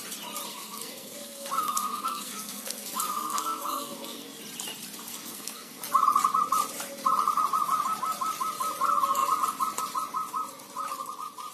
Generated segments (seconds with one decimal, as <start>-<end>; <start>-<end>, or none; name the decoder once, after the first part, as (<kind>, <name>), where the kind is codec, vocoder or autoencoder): 0.5-4.4 (codec, SNAC); 5.1-5.8